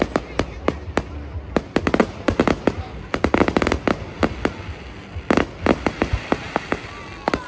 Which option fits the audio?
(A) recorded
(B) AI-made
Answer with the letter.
A